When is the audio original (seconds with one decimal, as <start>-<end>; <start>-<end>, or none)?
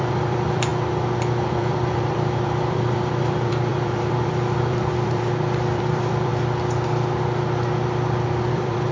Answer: 0.7-1.5; 6.3-8.5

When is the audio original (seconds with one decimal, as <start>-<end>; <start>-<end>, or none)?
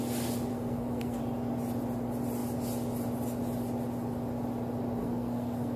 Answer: 0.0-0.5; 1.2-5.0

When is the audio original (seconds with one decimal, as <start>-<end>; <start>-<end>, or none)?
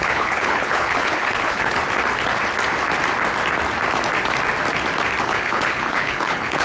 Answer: 1.8-5.2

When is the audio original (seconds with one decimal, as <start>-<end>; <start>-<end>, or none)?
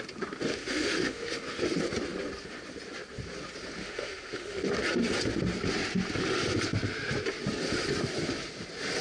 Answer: 0.0-0.5; 1.4-3.8; 4.7-9.0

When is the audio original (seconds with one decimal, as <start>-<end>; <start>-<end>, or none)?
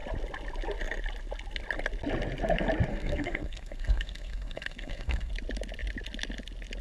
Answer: 0.0-2.9; 5.3-6.8